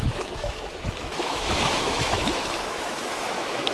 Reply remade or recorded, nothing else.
remade